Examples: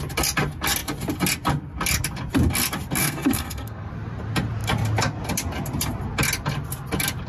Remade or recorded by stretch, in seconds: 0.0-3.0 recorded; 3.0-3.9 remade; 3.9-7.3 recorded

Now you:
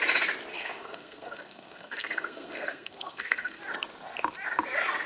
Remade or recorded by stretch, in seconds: 0.0-0.5 recorded; 0.5-3.6 remade; 3.6-5.1 recorded

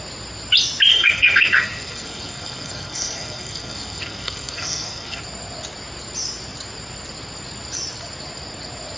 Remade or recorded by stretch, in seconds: 0.0-0.9 recorded; 0.9-5.2 remade; 5.2-9.0 recorded